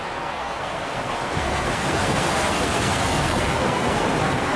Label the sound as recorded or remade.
remade